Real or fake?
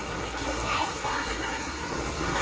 fake